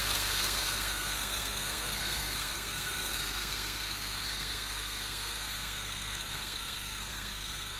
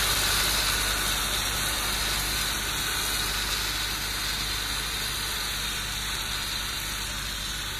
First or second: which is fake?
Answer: first